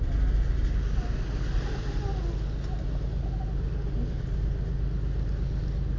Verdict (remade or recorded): recorded